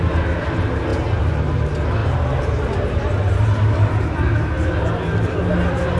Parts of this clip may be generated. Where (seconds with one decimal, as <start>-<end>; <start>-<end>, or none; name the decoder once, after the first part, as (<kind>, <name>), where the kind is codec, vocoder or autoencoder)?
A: none